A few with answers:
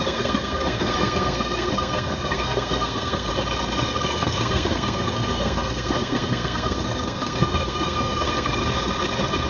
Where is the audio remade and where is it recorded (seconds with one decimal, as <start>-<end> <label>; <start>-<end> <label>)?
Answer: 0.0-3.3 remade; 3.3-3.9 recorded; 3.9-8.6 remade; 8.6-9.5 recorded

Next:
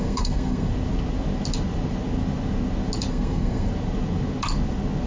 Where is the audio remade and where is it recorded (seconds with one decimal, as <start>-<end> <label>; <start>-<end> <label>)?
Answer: 0.0-0.7 remade; 0.7-3.1 recorded; 3.1-3.7 remade; 3.7-5.1 recorded

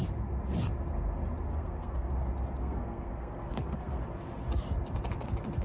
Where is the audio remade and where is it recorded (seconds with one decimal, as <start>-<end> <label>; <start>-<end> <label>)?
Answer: 0.0-1.5 recorded; 1.5-2.1 remade; 2.1-2.6 recorded; 2.6-4.0 remade; 4.0-5.6 recorded

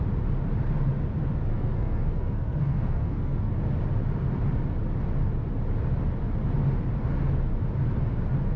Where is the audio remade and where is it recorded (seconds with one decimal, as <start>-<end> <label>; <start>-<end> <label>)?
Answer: 0.0-1.5 recorded; 1.5-3.5 remade; 3.5-8.6 recorded

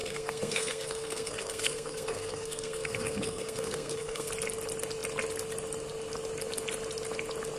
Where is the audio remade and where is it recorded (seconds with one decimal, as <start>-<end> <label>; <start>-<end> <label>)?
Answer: 0.0-4.3 remade; 4.3-7.6 recorded